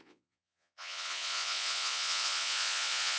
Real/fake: fake